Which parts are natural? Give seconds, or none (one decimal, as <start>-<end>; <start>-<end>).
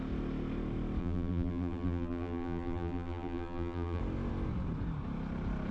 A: 0.0-1.0; 4.0-5.7